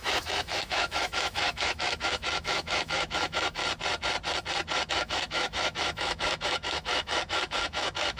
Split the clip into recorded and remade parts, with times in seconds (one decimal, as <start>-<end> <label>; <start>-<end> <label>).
0.0-3.6 remade; 3.6-4.9 recorded; 4.9-8.2 remade

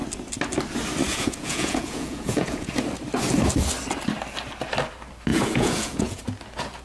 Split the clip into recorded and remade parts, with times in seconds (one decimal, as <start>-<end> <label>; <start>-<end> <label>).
0.0-1.1 recorded; 1.1-2.7 remade; 2.7-5.3 recorded; 5.3-6.2 remade; 6.2-6.8 recorded

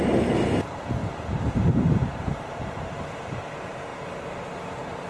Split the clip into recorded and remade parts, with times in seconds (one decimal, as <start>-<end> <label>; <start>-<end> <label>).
0.0-1.0 recorded; 1.0-2.9 remade; 2.9-5.1 recorded

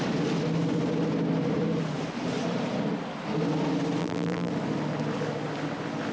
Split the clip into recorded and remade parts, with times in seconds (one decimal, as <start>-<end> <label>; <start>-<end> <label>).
0.0-4.0 recorded; 4.0-4.5 remade; 4.5-6.1 recorded

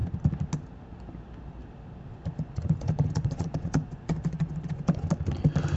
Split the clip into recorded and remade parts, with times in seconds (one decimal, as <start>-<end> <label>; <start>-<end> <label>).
0.0-2.1 recorded; 2.1-5.1 remade; 5.1-5.8 recorded

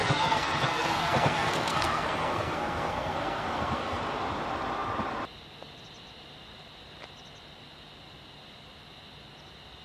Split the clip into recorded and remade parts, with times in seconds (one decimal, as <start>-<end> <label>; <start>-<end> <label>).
0.0-4.0 remade; 4.0-9.8 recorded

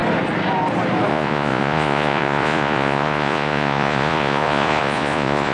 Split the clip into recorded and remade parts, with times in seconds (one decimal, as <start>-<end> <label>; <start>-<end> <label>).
0.0-1.1 recorded; 1.1-5.5 remade

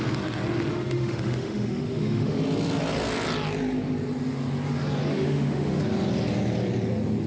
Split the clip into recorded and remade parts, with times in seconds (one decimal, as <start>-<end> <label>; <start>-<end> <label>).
0.0-0.7 recorded; 0.7-2.4 remade; 2.4-5.1 recorded; 5.1-5.8 remade; 5.8-7.3 recorded